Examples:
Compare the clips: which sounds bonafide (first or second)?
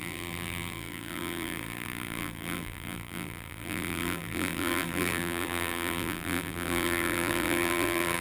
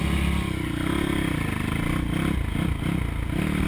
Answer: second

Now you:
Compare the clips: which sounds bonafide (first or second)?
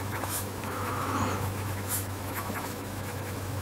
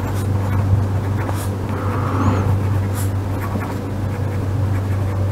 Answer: second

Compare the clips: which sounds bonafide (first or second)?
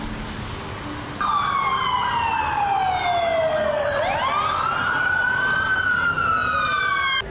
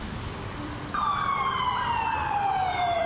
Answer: first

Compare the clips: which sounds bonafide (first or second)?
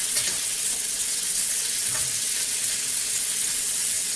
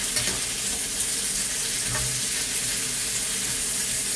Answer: second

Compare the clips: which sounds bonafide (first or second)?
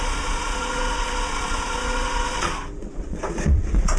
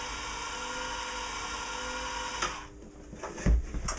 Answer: second